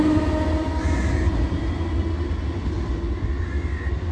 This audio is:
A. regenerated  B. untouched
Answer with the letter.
B